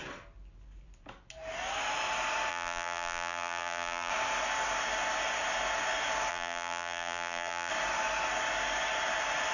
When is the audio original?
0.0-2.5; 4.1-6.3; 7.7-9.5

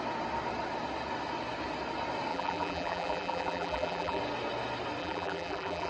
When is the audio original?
0.0-2.3; 4.2-5.0

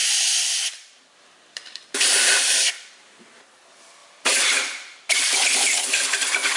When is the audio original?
2.7-4.0; 5.8-6.6

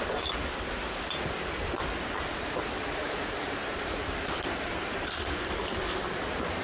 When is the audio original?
0.0-3.0; 5.7-6.6

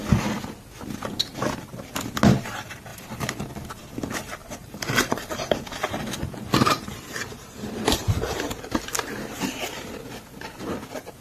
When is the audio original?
0.0-2.9; 3.5-4.4; 8.5-11.2

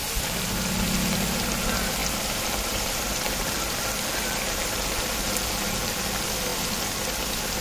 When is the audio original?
0.0-2.0; 6.0-7.6

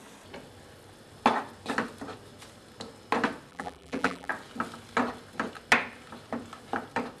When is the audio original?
0.0-3.5; 4.3-7.2

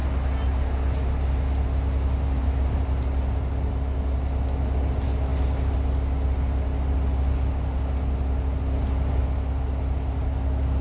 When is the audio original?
0.0-10.8